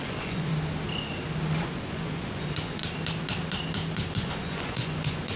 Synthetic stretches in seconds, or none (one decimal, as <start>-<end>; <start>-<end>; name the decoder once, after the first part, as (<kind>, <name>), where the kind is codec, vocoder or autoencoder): 0.0-0.5 (vocoder, Vocos); 1.6-2.8; 4.1-5.4